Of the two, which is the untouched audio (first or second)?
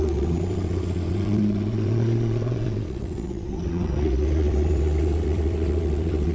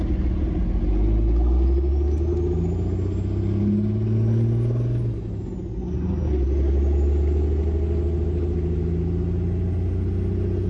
second